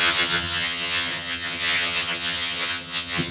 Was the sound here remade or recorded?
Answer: remade